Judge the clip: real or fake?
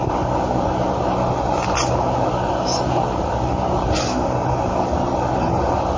real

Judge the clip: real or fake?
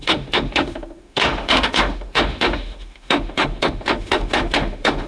fake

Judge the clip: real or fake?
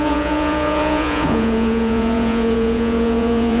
fake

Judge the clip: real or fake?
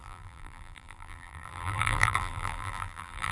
fake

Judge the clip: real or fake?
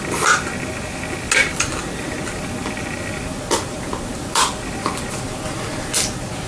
real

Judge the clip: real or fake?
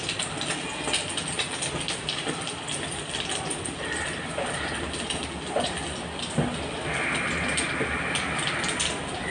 real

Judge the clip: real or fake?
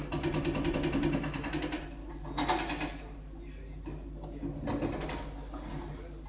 real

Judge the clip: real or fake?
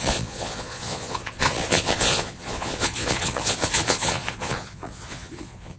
fake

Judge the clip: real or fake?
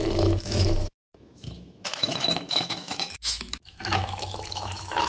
fake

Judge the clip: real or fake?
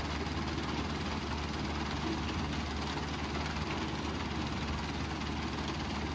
real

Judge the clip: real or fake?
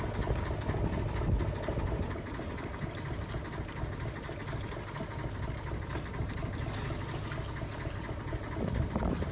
real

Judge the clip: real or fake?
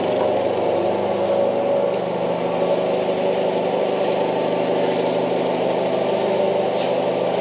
real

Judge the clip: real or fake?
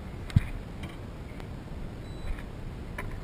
real